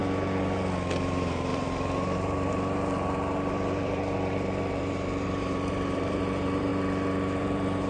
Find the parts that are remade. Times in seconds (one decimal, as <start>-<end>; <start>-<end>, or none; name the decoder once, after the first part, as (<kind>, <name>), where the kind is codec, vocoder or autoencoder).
1.0-6.7 (vocoder, BigVGAN v2); 7.4-7.9